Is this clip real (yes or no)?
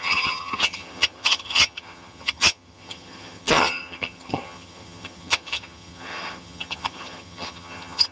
no